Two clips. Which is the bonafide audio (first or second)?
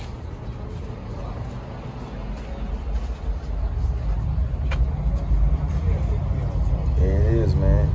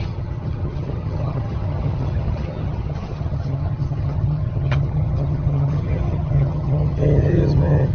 first